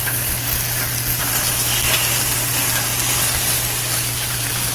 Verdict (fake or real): real